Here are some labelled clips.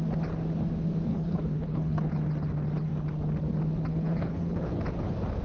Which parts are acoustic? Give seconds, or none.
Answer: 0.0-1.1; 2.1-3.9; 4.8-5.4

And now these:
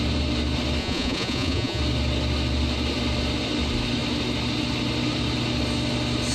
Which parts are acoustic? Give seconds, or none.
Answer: 0.0-0.8; 1.8-6.3

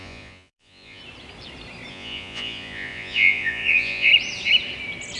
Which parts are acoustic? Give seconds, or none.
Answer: 1.0-1.9; 4.1-5.2

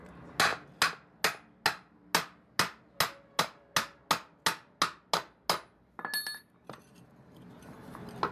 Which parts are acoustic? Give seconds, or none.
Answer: 0.0-8.3

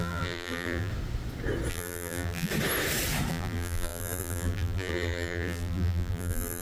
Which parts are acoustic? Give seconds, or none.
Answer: 0.9-1.7; 2.5-3.3

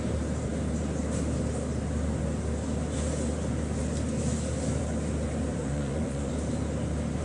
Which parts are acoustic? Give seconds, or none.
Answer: 0.0-5.6; 6.3-7.2

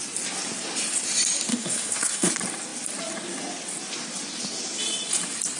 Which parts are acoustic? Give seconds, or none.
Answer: 0.0-1.5; 2.3-5.6

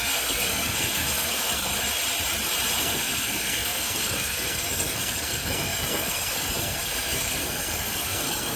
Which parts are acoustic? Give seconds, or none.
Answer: 1.7-2.8